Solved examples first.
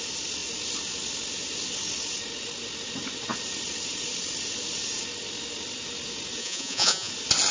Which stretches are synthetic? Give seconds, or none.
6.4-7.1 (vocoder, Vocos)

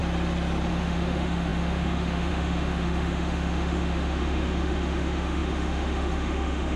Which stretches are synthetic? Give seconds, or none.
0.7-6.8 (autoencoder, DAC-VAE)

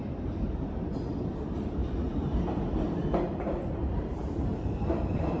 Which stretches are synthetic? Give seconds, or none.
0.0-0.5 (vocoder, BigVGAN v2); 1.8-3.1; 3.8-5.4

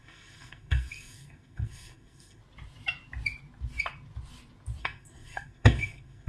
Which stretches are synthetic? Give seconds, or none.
0.0-2.4 (codec, SNAC); 4.8-6.3

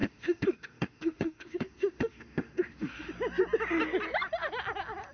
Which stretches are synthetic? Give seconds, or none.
0.0-3.1 (autoencoder, DAC-VAE)

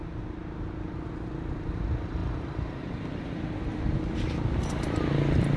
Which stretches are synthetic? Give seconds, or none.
2.2-5.0 (vocoder, BigVGAN v2)

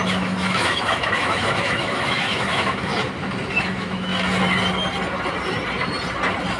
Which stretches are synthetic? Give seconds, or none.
0.0-2.9 (autoencoder, DAC-VAE); 3.6-4.1